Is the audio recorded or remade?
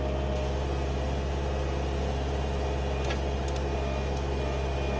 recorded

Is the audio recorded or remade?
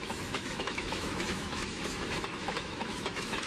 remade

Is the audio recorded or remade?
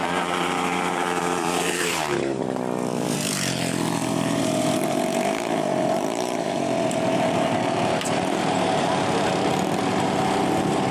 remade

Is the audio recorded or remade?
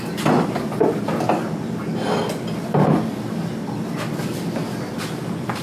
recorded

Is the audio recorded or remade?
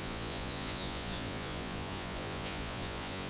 remade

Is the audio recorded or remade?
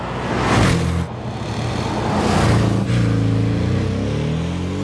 recorded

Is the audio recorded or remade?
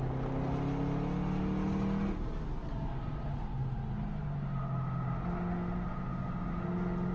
recorded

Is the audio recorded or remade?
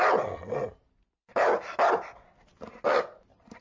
recorded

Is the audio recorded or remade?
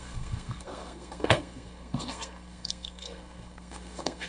remade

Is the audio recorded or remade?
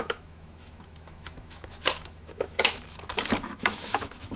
remade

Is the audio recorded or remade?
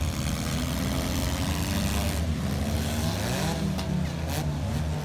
recorded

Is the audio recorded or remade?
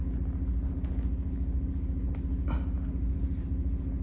recorded